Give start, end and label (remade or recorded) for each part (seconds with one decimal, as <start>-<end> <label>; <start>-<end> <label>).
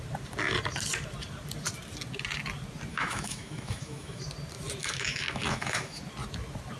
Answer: 0.0-2.9 recorded; 2.9-4.2 remade; 4.2-4.8 recorded; 4.8-6.0 remade; 6.0-6.8 recorded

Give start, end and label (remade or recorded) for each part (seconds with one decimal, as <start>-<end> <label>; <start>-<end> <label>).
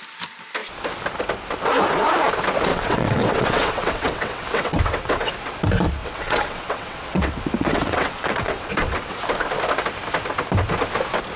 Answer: 0.0-2.7 recorded; 2.7-5.3 remade; 5.3-6.0 recorded; 6.0-9.2 remade; 9.2-11.4 recorded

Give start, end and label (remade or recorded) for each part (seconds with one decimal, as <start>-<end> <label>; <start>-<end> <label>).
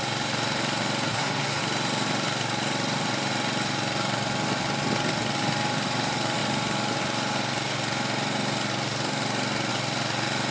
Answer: 0.0-1.1 recorded; 1.1-1.6 remade; 1.6-10.5 recorded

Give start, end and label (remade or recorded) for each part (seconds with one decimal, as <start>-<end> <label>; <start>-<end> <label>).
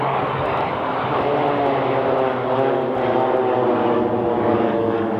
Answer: 0.0-1.3 remade; 1.3-4.4 recorded; 4.4-5.2 remade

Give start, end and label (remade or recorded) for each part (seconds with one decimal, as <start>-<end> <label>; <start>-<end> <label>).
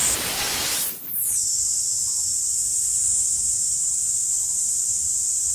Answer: 0.0-5.5 recorded